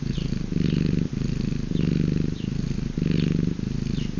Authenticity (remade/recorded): recorded